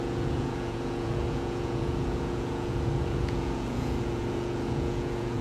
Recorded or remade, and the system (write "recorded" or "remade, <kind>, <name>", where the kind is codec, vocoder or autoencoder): remade, vocoder, Vocos